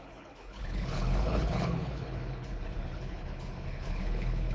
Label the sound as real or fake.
fake